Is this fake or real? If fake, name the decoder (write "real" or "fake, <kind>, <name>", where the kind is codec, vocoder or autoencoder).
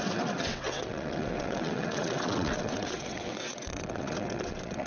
fake, vocoder, WaveNeXt